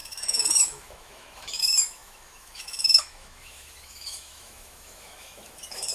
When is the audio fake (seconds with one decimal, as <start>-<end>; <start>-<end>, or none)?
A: 0.0-5.9